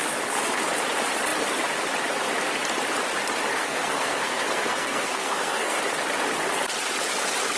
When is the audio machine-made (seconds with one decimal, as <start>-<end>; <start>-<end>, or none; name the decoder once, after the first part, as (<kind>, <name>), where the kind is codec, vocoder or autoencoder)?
3.5-5.8 (codec, SNAC)